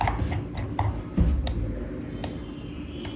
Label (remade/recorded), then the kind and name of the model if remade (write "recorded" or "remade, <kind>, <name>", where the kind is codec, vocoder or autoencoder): recorded